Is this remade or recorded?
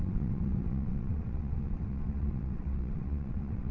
remade